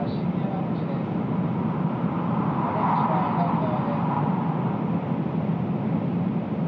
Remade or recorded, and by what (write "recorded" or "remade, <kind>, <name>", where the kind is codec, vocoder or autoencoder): recorded